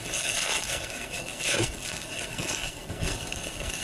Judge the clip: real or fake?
fake